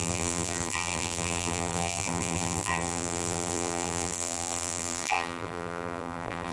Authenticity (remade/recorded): remade